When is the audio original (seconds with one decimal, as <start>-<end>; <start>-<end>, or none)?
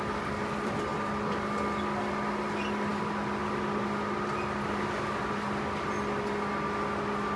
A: 0.0-7.4